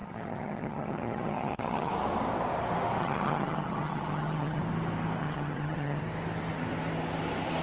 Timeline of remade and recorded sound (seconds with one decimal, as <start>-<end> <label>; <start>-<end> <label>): 0.0-1.9 remade; 1.9-3.0 recorded; 3.0-4.6 remade; 4.6-5.2 recorded; 5.2-6.0 remade; 6.0-7.6 recorded